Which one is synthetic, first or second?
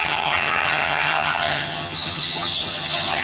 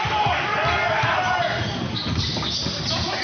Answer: first